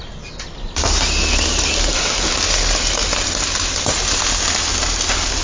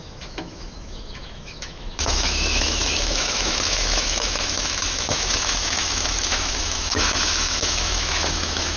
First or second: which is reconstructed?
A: second